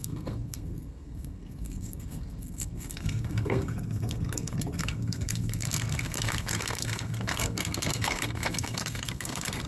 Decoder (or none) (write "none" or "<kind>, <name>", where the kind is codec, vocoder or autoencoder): codec, SNAC